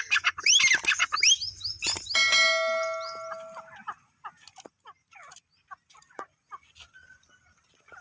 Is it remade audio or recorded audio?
recorded